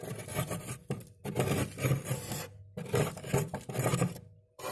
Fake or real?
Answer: fake